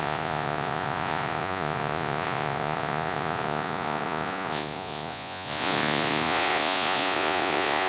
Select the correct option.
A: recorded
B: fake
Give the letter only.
B